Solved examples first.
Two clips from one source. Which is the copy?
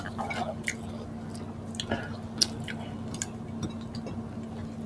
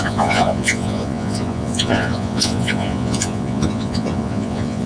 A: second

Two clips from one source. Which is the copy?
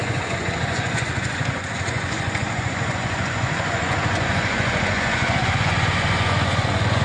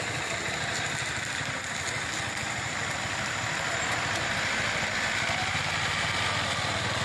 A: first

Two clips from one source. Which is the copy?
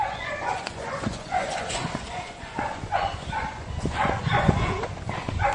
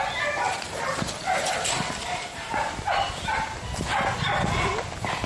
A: first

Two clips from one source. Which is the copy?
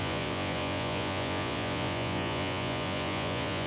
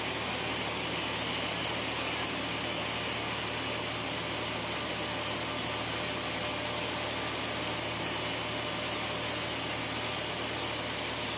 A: first